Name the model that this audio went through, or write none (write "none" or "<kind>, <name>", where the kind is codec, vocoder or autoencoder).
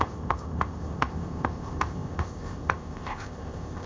codec, ZipCodec